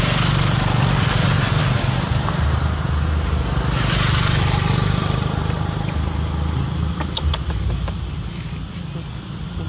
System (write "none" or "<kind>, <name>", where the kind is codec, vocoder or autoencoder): none